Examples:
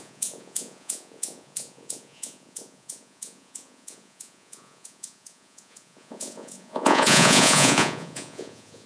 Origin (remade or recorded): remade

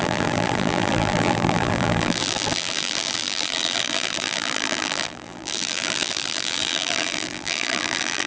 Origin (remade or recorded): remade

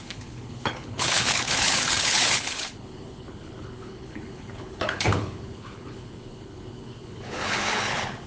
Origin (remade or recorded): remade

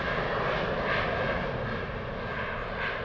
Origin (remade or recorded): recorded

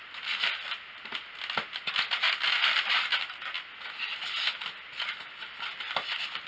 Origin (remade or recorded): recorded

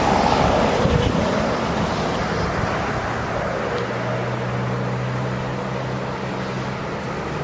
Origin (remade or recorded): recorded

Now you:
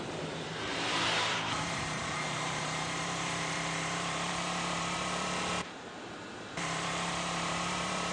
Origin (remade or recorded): remade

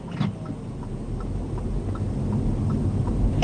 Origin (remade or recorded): recorded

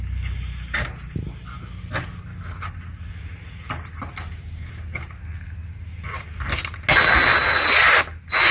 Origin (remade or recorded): recorded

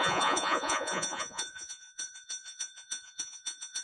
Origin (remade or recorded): remade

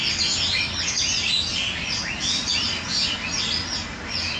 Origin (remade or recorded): recorded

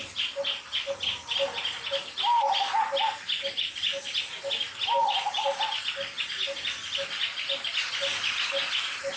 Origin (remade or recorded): recorded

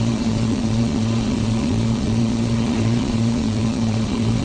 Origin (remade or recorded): remade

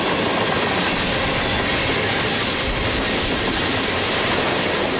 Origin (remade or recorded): recorded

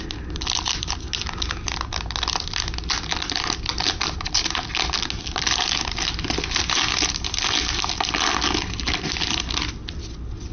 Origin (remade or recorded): recorded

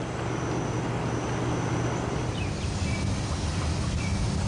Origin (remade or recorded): recorded